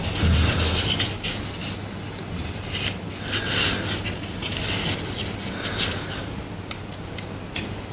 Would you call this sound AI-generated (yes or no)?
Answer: no